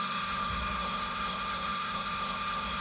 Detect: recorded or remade remade